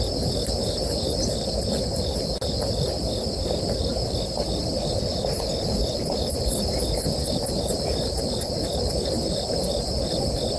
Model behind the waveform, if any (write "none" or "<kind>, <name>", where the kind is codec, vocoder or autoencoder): none